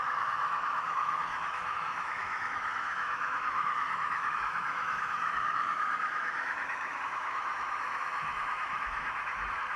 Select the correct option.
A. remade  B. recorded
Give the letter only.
A